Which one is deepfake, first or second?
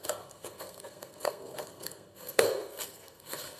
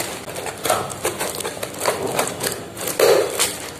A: first